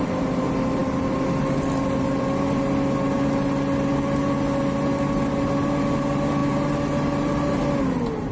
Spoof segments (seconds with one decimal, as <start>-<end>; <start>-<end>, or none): none